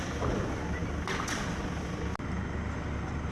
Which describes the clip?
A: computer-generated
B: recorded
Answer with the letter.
B